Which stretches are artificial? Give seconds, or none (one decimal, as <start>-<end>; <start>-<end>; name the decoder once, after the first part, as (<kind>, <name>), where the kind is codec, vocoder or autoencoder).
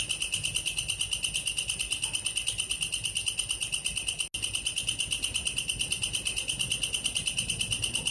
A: none